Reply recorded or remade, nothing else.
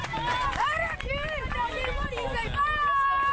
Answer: recorded